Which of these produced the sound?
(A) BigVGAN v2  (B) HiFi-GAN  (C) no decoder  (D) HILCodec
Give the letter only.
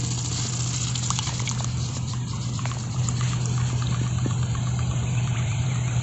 A